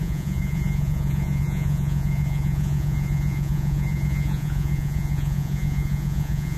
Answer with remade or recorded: remade